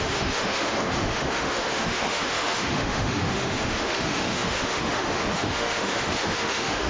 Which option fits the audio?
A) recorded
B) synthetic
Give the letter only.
B